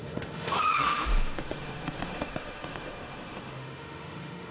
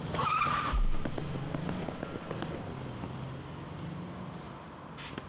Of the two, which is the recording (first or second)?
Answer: second